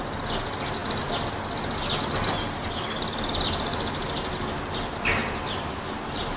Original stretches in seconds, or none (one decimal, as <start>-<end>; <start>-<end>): 0.0-6.4